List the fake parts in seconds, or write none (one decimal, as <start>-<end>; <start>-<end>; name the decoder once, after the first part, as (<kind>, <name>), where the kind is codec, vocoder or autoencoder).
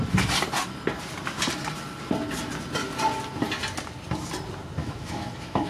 4.8-5.7 (autoencoder, DAC-VAE)